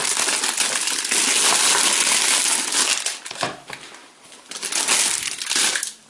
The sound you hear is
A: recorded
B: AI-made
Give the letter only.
A